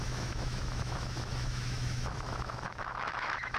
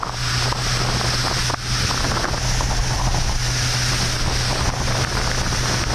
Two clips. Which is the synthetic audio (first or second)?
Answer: first